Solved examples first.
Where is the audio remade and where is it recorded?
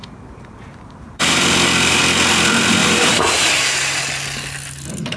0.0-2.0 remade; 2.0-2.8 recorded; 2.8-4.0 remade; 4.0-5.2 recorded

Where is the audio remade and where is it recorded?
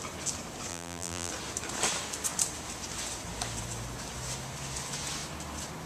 0.0-0.7 recorded; 0.7-1.3 remade; 1.3-5.9 recorded